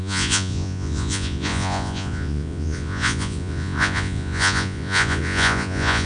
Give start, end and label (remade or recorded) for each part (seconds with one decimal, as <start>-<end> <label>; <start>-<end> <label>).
0.0-6.1 remade